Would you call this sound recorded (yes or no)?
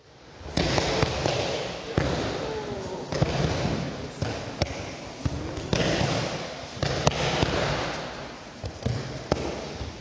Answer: yes